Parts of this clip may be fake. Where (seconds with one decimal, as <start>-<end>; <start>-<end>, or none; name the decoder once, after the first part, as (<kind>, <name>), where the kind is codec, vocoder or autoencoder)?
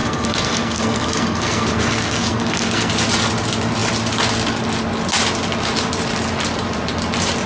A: 0.0-2.9 (codec, SNAC)